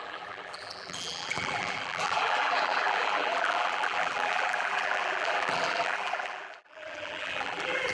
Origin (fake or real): fake